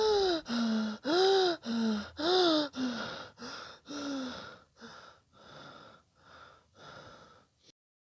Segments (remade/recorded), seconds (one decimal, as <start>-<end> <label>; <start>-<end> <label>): 0.0-8.1 recorded